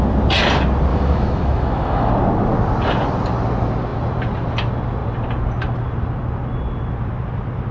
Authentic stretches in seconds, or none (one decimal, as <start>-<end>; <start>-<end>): 0.0-0.9; 2.1-7.7